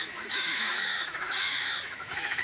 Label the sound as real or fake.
fake